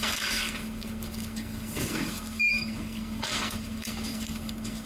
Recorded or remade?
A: remade